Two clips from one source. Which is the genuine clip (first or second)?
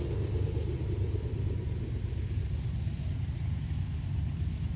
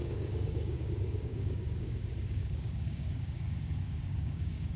first